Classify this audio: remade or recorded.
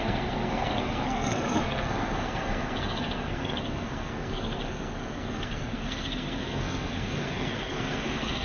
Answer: remade